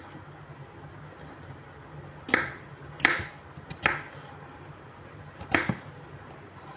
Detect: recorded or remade recorded